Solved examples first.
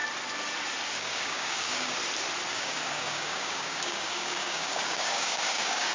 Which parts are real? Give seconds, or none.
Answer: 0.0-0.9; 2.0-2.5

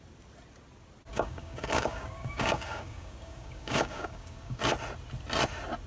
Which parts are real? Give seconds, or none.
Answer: 0.0-1.1; 4.6-5.9

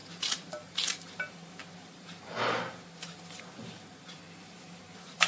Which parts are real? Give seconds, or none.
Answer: 0.0-5.3

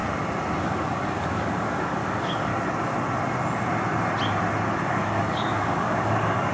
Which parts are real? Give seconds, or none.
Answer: 0.0-0.6; 2.5-4.9